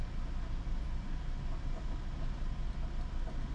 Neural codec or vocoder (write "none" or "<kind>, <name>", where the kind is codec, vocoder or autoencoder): none